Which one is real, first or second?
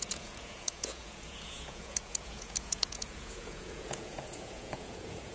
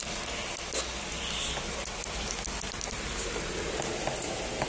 second